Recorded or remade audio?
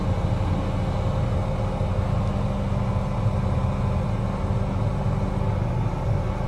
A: recorded